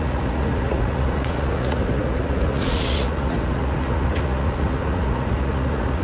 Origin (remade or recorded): remade